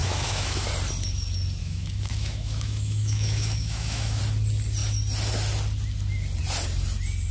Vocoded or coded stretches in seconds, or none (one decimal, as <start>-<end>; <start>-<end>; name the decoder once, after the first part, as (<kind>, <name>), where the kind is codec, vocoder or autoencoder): 0.0-0.7 (autoencoder, DAC-VAE); 1.6-4.2